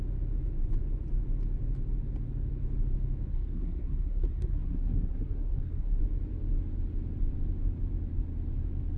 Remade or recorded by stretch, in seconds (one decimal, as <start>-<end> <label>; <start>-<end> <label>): 0.0-3.3 recorded; 3.3-6.0 remade; 6.0-9.0 recorded